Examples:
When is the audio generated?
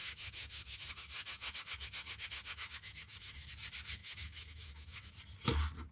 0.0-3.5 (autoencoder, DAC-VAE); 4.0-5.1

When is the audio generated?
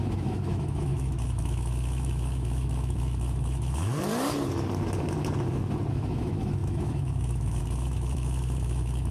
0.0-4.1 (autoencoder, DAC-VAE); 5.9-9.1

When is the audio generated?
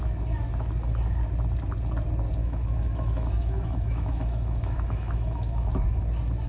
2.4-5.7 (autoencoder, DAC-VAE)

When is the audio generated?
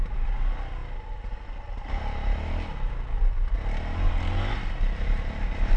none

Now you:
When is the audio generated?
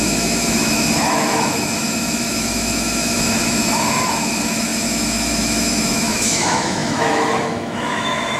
0.0-8.4 (autoencoder, DAC-VAE)